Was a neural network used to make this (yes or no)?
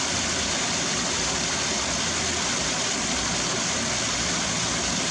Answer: no